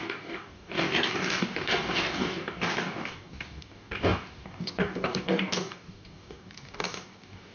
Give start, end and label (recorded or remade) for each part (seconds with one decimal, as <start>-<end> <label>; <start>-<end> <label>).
0.0-7.5 remade